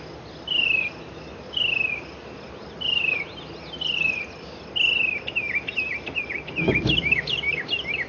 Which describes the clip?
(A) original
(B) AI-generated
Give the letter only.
A